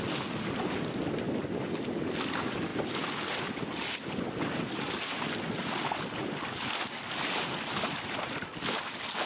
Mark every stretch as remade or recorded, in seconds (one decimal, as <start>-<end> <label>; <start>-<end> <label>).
0.0-2.7 recorded; 2.7-6.7 remade; 6.7-9.3 recorded